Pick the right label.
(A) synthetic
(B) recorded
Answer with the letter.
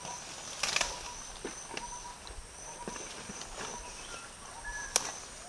B